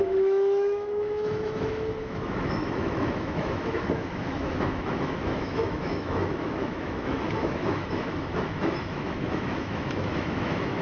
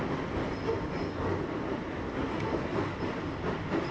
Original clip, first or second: second